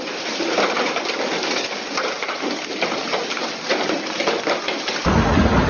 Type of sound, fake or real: real